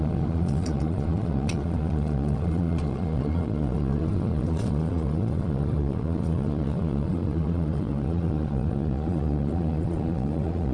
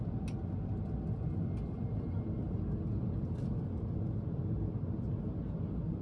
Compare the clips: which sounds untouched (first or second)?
second